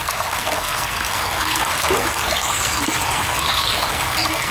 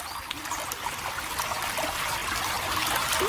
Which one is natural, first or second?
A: second